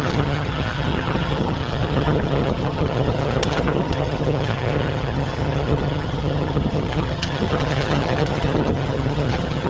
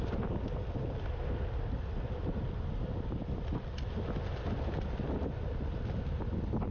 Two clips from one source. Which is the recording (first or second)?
second